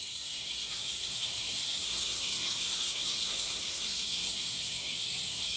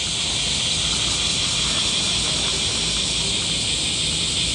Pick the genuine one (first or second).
second